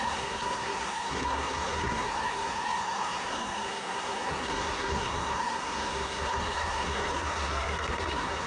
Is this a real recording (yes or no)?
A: no